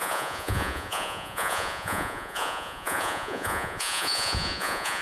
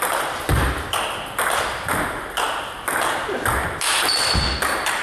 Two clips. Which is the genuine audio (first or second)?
second